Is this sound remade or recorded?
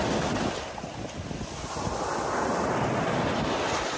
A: recorded